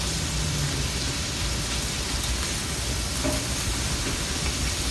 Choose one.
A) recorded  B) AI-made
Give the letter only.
A